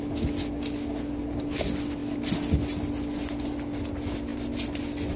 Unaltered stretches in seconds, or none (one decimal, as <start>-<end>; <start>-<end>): 0.0-5.2